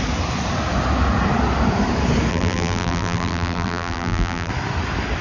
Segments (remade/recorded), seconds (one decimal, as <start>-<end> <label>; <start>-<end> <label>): 0.0-2.3 recorded; 2.3-4.5 remade; 4.5-5.2 recorded